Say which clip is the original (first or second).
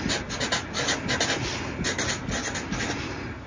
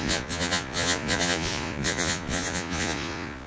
first